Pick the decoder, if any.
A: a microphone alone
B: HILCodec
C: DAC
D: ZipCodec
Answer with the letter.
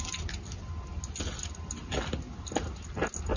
A